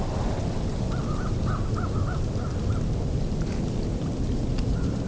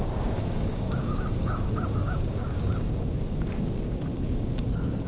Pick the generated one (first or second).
second